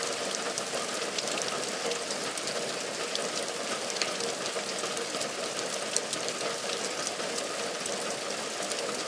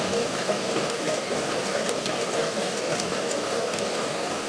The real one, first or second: first